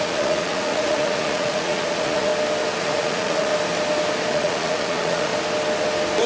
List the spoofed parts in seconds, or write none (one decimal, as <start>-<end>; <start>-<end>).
0.0-2.3; 2.8-3.5; 4.3-5.3